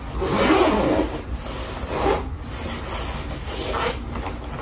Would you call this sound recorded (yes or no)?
yes